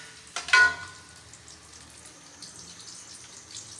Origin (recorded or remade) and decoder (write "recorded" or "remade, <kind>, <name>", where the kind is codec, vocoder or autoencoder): recorded